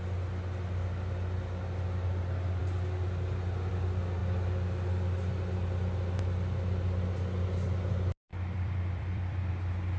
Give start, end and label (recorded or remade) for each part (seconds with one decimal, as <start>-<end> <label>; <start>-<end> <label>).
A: 0.0-8.3 recorded; 8.3-9.5 remade; 9.5-10.0 recorded